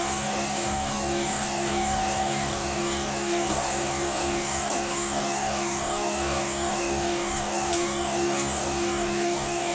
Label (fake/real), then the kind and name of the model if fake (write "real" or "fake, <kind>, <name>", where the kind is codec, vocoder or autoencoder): fake, codec, DAC